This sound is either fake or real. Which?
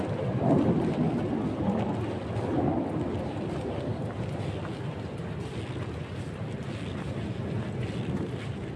real